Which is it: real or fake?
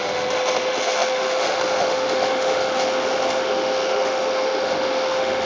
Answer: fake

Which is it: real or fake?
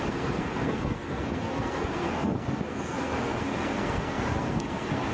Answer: fake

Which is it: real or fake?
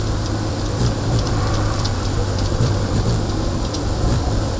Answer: fake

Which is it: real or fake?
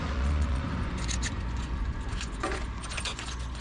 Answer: fake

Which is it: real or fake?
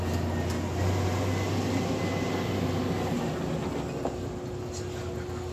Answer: real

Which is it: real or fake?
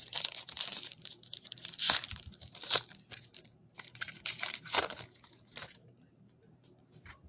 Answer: fake